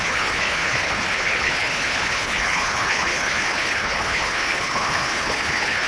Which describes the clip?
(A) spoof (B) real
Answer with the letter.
A